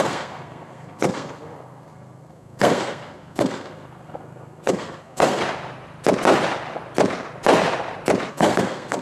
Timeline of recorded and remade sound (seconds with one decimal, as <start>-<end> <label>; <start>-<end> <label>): 0.0-5.4 remade; 5.4-8.3 recorded; 8.3-9.0 remade